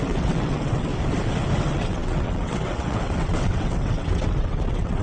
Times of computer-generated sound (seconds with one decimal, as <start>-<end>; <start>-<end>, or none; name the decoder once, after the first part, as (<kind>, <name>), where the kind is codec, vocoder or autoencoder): 0.0-0.9 (vocoder, WaveNeXt); 1.6-5.0